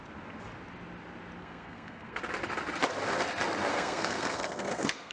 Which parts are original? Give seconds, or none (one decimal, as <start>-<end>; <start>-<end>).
0.0-1.4; 2.2-3.7